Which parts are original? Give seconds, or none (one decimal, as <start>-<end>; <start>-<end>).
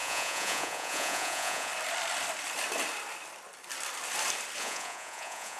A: 1.7-4.6